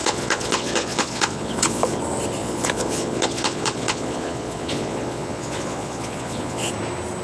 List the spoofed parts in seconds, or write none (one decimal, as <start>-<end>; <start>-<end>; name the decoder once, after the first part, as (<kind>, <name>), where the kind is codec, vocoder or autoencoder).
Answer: 0.0-2.0 (vocoder, Vocos); 2.4-6.7